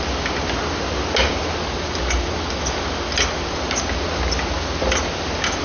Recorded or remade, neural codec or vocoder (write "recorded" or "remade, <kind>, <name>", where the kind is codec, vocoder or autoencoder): recorded